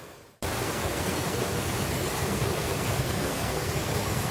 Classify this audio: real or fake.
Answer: fake